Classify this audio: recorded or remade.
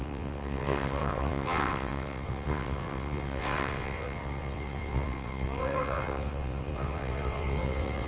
remade